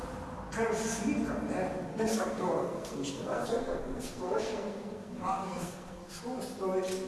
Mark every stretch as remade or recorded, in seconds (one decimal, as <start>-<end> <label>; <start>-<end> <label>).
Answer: 0.0-1.9 recorded; 1.9-6.2 remade; 6.2-7.1 recorded